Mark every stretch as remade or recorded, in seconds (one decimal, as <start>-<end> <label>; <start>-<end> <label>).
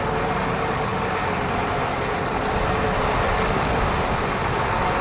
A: 0.0-5.0 recorded